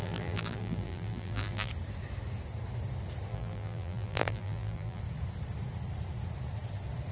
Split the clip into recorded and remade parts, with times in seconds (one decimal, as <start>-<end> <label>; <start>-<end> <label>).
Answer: 0.0-1.7 remade; 1.7-3.3 recorded; 3.3-5.0 remade; 5.0-7.1 recorded